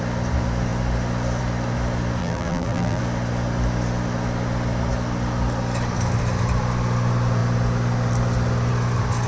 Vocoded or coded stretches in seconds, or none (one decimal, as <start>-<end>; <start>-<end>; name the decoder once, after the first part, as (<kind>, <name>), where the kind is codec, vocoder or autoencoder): 2.2-3.0 (vocoder, BigVGAN v2)